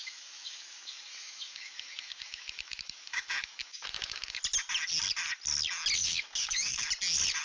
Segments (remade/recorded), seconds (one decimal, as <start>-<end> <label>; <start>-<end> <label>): 0.0-4.4 remade; 4.4-6.0 recorded; 6.0-6.9 remade; 6.9-7.4 recorded